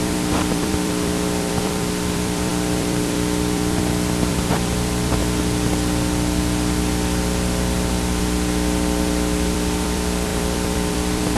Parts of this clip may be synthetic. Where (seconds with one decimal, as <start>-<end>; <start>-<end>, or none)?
0.0-5.2; 8.2-11.4